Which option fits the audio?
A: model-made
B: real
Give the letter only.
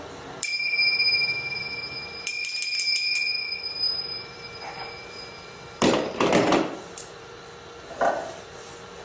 A